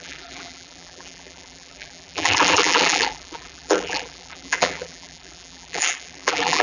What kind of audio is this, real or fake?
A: fake